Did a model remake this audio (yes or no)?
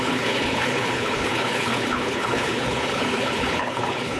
yes